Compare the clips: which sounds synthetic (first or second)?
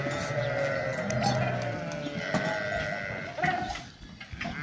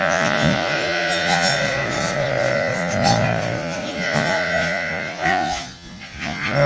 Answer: second